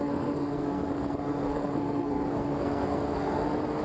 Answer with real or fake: fake